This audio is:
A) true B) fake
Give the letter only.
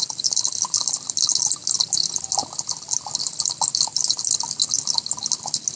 A